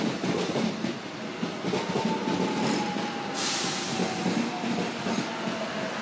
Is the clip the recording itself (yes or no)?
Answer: yes